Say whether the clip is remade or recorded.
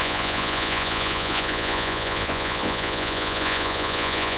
remade